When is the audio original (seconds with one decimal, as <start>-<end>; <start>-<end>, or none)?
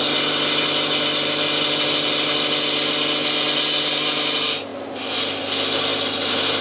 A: 0.0-6.6